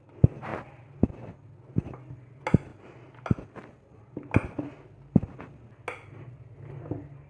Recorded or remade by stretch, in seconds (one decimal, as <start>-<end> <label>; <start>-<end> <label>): 0.0-7.3 recorded